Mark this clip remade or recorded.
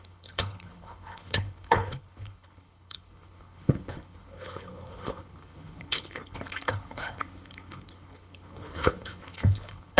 remade